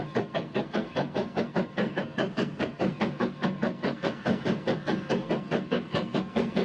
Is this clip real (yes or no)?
no